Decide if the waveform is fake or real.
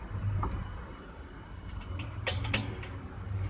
real